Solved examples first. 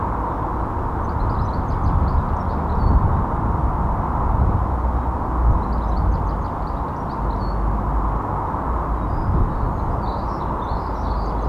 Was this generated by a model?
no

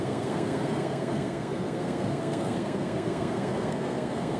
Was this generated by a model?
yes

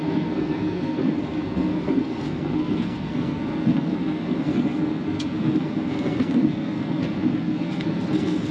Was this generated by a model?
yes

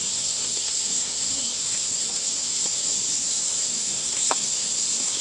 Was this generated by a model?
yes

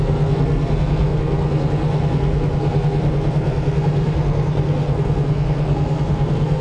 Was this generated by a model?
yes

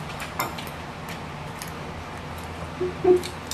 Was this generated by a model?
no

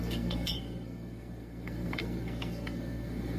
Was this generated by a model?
yes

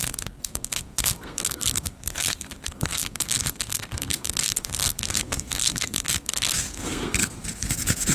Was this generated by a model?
yes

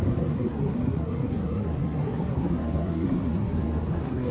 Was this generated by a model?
yes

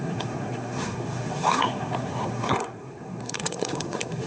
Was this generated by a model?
yes